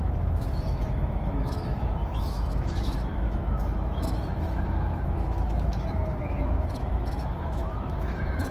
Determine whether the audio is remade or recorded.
remade